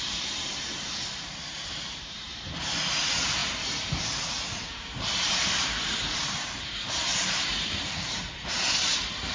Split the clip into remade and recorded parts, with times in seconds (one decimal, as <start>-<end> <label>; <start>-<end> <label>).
0.0-9.3 remade